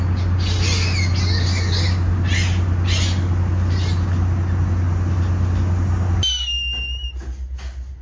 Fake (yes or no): no